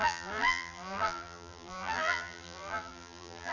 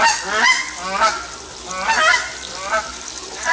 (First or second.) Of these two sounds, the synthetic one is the first